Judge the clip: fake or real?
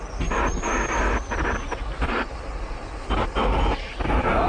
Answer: real